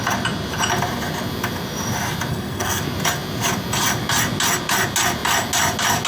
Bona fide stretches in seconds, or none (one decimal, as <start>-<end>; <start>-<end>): 0.0-2.3; 2.8-6.1